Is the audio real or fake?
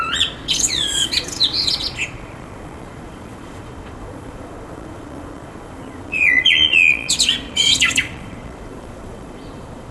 fake